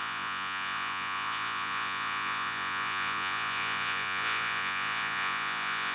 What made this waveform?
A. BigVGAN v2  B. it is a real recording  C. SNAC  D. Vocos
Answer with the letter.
D